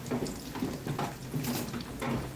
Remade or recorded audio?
recorded